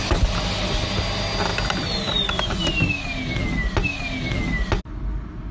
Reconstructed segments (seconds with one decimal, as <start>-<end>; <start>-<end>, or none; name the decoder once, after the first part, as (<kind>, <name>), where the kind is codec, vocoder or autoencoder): none